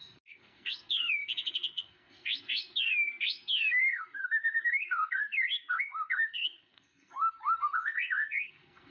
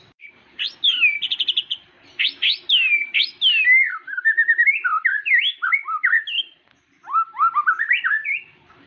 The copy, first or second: first